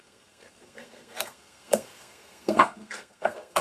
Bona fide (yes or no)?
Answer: no